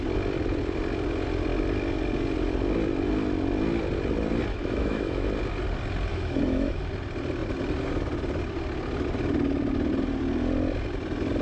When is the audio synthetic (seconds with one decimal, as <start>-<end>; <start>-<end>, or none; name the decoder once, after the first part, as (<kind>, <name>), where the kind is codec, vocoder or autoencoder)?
4.5-5.3 (autoencoder, DAC-VAE); 6.1-6.9